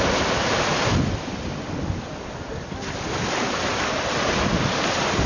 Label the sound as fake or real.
real